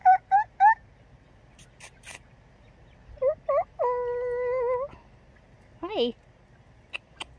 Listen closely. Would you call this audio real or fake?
real